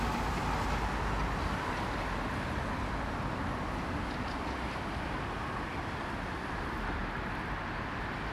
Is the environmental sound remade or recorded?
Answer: recorded